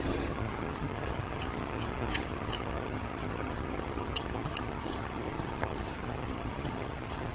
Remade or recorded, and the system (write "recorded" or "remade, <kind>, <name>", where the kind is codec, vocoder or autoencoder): remade, vocoder, HiFi-GAN